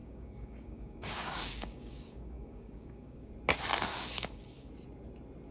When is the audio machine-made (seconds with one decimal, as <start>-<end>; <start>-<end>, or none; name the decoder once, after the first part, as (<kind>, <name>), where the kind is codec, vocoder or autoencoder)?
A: 0.0-3.3 (codec, DAC); 3.9-4.7

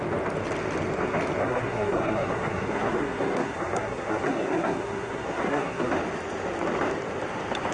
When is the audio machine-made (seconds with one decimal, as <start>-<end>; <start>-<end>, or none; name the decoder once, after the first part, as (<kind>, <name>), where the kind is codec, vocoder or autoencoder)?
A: 1.4-5.9 (codec, SNAC)

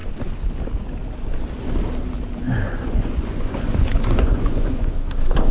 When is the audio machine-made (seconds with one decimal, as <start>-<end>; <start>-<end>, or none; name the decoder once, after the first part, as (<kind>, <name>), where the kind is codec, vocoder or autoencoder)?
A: 2.4-5.1 (vocoder, Vocos)

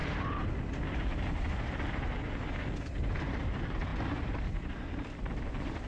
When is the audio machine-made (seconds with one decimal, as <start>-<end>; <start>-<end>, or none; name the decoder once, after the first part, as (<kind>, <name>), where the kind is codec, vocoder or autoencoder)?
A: none

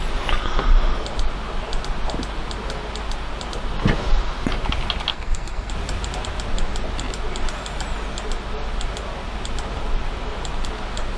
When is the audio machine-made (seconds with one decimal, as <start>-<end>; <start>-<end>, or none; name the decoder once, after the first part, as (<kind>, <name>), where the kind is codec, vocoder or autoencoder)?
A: 5.1-5.7 (codec, SNAC)

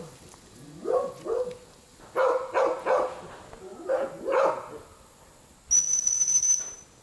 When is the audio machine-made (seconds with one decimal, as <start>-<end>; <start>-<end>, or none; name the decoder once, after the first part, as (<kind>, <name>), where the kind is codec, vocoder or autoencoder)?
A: none

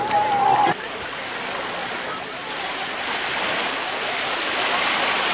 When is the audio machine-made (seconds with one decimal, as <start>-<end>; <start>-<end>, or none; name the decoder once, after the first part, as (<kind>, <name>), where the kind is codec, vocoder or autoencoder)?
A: 1.8-3.0 (vocoder, BigVGAN v2)